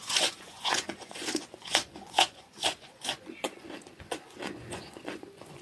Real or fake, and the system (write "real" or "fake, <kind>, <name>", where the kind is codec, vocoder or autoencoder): fake, vocoder, Vocos